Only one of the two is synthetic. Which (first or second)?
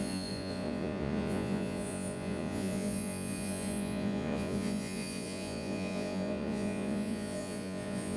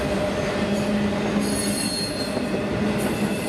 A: first